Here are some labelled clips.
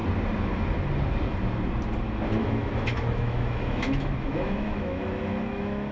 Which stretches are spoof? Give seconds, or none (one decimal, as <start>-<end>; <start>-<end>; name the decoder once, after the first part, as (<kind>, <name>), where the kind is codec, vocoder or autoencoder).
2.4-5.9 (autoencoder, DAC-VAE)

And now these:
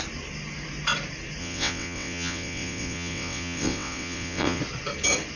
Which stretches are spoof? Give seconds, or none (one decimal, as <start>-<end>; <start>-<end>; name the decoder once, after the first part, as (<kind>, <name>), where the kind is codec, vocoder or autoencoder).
1.4-4.6 (vocoder, WaveNeXt)

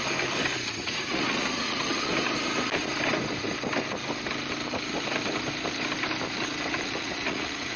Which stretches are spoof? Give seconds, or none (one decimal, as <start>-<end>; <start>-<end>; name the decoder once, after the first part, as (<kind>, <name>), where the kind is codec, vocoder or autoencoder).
0.8-2.1 (vocoder, Vocos); 6.8-7.8

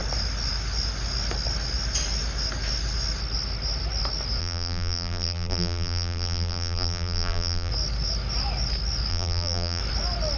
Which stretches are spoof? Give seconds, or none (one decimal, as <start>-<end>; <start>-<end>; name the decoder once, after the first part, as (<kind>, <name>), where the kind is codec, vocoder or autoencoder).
4.4-7.7 (vocoder, BigVGAN v2); 9.1-9.8

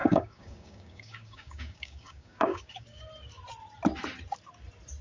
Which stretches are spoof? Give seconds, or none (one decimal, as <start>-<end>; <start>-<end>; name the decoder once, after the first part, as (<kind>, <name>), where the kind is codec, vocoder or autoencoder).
0.0-3.0 (codec, DAC)

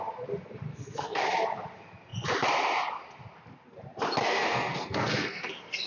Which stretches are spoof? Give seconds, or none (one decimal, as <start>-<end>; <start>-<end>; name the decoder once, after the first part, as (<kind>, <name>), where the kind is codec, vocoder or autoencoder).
0.7-1.2 (codec, SNAC); 4.2-5.5

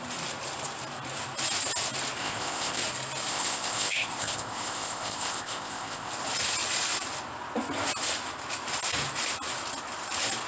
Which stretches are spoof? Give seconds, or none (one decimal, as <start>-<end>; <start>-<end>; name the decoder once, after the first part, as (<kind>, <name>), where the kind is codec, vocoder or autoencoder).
2.2-2.8 (codec, ZipCodec); 3.3-6.1